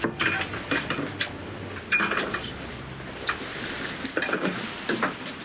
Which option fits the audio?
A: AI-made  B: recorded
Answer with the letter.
B